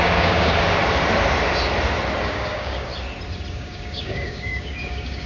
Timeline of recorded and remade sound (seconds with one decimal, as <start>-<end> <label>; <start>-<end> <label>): 0.0-0.8 remade; 0.8-2.2 recorded; 2.2-2.9 remade; 2.9-3.5 recorded; 3.5-5.3 remade